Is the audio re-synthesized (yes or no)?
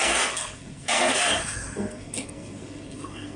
yes